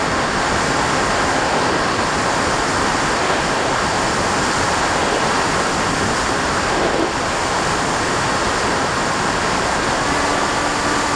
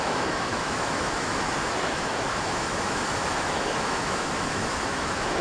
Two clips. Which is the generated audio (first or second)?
second